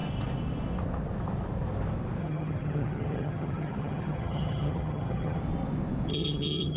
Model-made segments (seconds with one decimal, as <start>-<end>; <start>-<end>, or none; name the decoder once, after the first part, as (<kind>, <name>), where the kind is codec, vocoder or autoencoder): 2.2-5.4 (vocoder, HiFi-GAN); 6.1-6.8